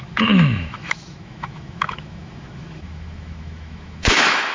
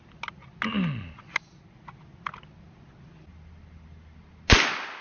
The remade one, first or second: first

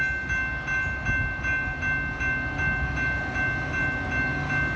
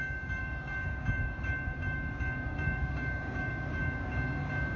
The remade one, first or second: second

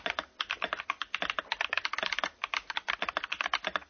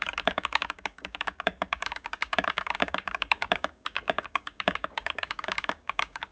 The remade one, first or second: second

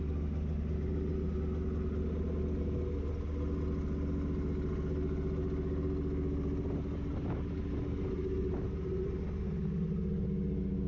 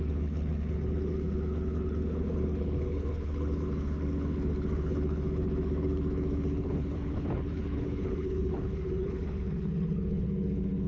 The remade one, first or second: second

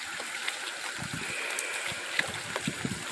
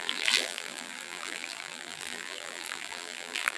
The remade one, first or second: second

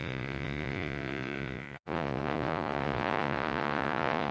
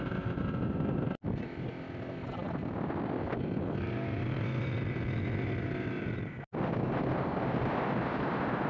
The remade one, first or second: first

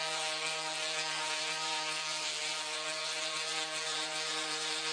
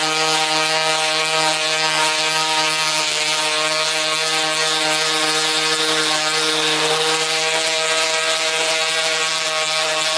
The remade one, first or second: first